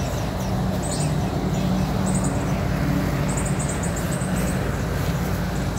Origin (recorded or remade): recorded